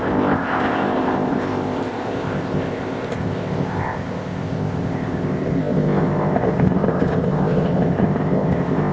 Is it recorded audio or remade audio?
remade